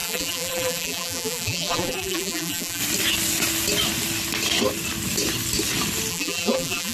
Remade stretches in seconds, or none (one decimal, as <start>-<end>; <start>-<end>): 0.0-2.8; 6.1-6.9